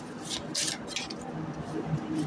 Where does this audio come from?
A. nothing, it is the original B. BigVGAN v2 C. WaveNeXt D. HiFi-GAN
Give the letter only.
A